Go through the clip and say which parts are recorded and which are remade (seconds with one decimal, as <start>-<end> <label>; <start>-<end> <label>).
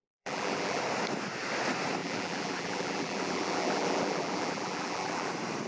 0.0-0.8 remade; 0.8-2.0 recorded; 2.0-5.3 remade; 5.3-5.7 recorded